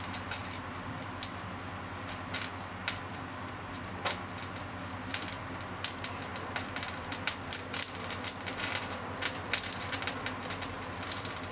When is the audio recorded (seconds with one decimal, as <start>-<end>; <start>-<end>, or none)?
0.0-0.4; 1.5-6.3